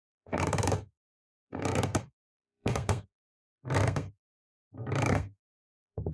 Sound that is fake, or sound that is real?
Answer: fake